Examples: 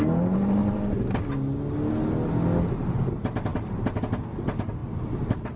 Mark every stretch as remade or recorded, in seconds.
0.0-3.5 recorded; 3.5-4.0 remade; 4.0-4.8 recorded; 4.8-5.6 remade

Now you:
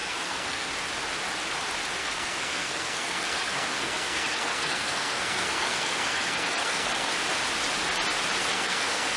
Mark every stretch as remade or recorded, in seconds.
0.0-0.7 remade; 0.7-2.0 recorded; 2.0-7.1 remade; 7.1-8.4 recorded; 8.4-9.2 remade

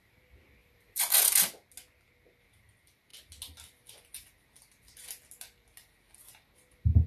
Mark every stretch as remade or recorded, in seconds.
0.0-0.6 recorded; 0.6-1.2 remade; 1.2-7.1 recorded